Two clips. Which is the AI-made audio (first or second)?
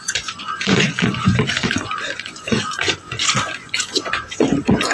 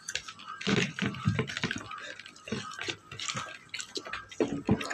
first